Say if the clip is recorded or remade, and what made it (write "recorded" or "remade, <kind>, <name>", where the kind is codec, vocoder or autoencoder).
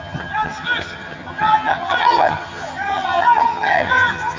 remade, vocoder, HiFi-GAN